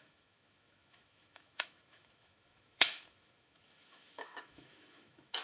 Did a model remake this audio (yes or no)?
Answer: yes